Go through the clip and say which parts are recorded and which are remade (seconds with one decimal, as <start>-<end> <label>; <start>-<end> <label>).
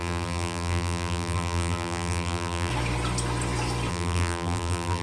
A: 0.0-2.7 remade; 2.7-3.9 recorded; 3.9-5.0 remade